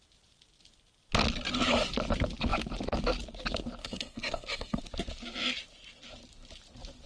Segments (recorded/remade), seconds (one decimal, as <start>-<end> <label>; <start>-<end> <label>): 0.0-3.8 recorded; 3.8-4.8 remade; 4.8-7.1 recorded